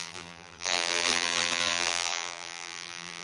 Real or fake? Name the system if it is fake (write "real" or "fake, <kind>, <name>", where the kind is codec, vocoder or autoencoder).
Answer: fake, vocoder, BigVGAN v2